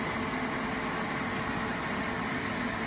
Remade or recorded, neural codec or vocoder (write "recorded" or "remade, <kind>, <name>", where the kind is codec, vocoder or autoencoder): recorded